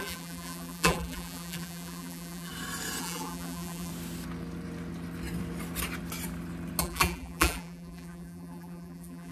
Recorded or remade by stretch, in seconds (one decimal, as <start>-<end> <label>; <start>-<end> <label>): 0.0-2.5 remade; 2.5-3.0 recorded; 3.0-3.9 remade; 3.9-6.8 recorded; 6.8-9.3 remade

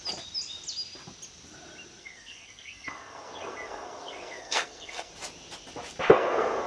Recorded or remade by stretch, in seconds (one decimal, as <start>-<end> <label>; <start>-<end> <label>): 0.0-2.0 recorded; 2.0-5.1 remade; 5.1-6.1 recorded; 6.1-6.7 remade

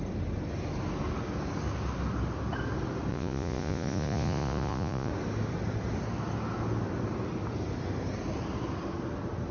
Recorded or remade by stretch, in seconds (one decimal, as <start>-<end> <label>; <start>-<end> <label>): 0.0-3.1 recorded; 3.1-5.1 remade; 5.1-9.5 recorded

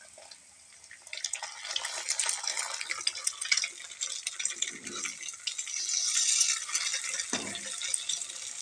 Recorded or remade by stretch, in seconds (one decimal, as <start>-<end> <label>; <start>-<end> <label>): 0.0-8.6 recorded

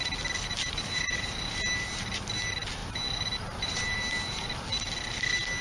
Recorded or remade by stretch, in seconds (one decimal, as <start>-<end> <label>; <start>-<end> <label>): 0.0-0.5 recorded; 0.5-2.2 remade; 2.2-2.8 recorded; 2.8-4.6 remade; 4.6-5.6 recorded